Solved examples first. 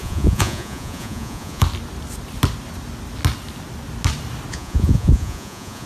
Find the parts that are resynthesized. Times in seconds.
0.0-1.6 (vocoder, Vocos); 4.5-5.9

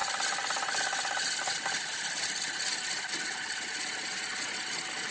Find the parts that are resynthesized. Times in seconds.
none

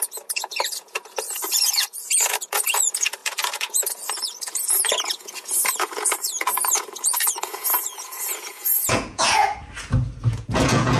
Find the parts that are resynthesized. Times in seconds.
0.0-9.6 (vocoder, Vocos); 10.3-11.0

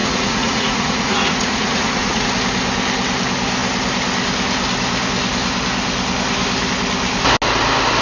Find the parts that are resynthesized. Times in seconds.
0.0-2.3 (vocoder, Vocos)

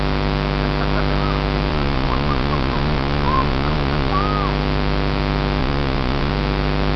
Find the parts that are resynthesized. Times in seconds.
1.7-4.1 (vocoder, Vocos); 5.6-6.3

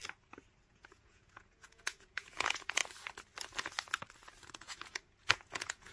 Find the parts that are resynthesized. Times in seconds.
0.7-2.8 (vocoder, Vocos); 4.4-5.9

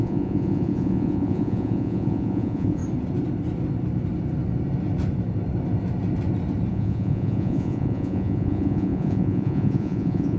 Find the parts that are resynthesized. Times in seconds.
0.0-2.8 (vocoder, Vocos); 6.7-10.4